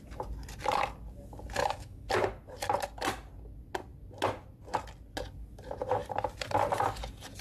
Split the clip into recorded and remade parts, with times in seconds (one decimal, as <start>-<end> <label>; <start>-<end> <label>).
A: 0.0-1.6 recorded; 1.6-2.1 remade; 2.1-7.4 recorded